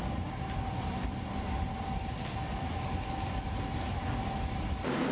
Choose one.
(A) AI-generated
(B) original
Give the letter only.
B